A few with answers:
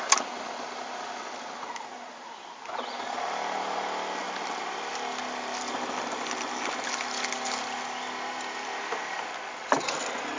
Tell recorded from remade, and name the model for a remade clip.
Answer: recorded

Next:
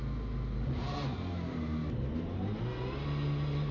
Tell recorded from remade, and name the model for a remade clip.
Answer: recorded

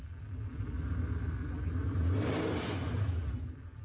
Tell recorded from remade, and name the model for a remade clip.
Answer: recorded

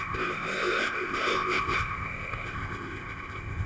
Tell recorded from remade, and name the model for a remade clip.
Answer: remade, codec, ZipCodec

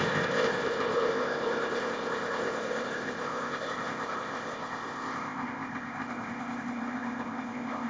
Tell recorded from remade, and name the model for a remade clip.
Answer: remade, codec, ZipCodec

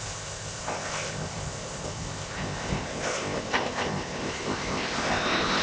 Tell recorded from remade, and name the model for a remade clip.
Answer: remade, codec, ZipCodec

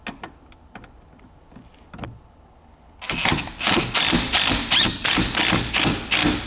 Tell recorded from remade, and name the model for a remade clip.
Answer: recorded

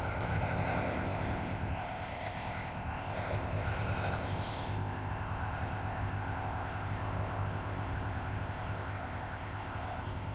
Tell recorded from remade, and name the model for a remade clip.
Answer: remade, codec, ZipCodec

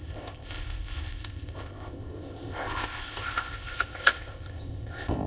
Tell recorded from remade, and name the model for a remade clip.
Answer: remade, codec, ZipCodec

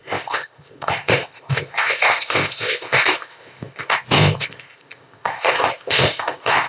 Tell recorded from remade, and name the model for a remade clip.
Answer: remade, codec, ZipCodec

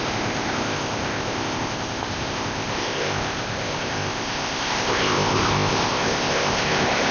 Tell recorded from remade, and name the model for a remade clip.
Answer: remade, codec, ZipCodec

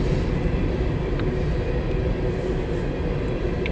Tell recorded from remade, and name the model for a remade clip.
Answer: recorded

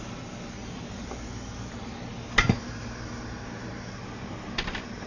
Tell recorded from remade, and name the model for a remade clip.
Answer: recorded